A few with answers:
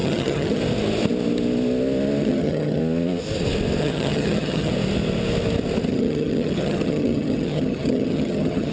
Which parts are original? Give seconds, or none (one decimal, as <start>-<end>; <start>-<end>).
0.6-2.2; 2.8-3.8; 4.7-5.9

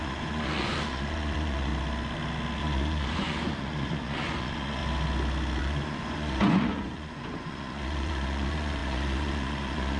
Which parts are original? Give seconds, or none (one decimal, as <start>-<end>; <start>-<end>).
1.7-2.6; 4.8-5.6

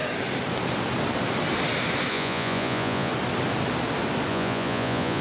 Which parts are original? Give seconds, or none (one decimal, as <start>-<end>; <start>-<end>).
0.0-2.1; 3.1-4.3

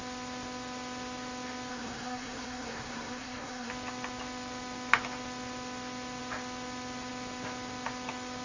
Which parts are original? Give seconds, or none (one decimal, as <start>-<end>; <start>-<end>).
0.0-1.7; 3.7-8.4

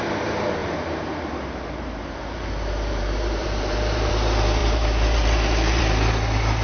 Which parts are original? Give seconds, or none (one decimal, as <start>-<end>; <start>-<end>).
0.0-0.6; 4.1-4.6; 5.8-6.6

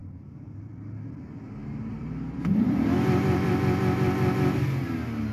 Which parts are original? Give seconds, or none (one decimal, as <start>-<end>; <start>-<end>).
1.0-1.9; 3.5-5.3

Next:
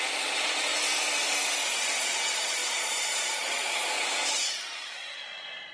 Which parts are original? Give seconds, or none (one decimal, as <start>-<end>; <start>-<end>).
0.7-1.8